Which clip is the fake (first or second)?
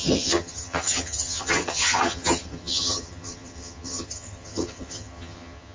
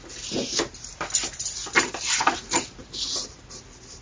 first